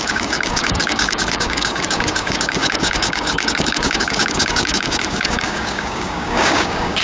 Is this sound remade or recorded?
remade